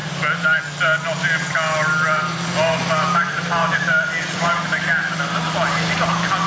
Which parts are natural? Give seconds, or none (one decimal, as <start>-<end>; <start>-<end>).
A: 0.0-6.5